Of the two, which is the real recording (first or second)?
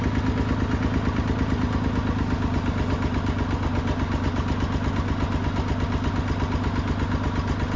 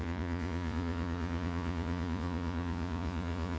first